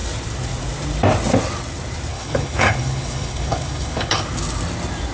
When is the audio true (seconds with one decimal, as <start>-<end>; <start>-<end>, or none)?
0.0-2.1; 4.2-5.1